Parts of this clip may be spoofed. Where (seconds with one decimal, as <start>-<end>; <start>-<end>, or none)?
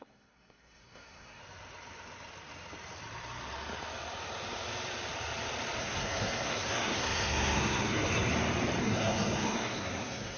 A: 0.0-1.4; 5.8-8.3; 8.8-10.4